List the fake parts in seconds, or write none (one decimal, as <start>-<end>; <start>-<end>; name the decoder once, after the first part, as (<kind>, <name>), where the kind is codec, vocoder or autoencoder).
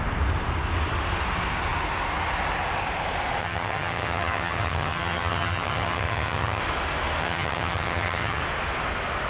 3.4-6.6 (vocoder, HiFi-GAN); 7.2-8.4